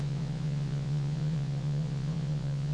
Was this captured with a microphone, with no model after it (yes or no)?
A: no